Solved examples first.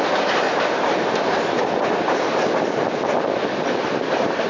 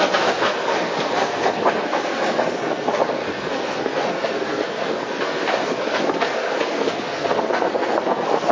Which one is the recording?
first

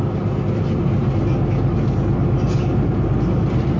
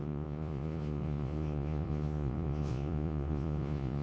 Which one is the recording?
first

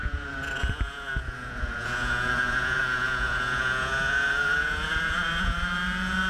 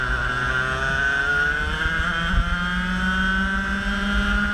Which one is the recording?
second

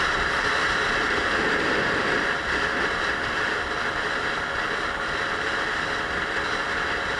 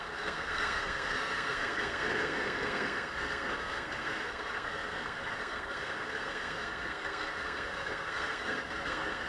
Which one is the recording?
first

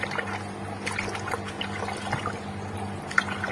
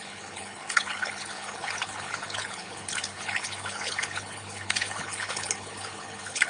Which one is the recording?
first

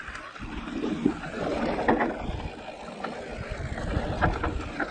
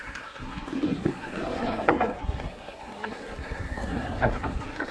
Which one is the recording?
first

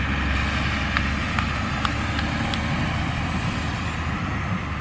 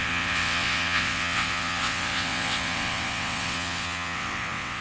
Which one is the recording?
first